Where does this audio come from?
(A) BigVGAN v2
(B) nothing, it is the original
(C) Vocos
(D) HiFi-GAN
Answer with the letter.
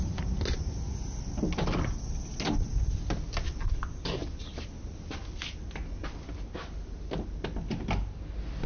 B